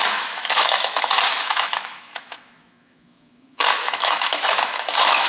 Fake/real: fake